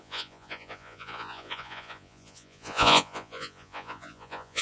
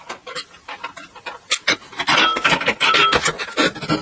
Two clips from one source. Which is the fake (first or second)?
first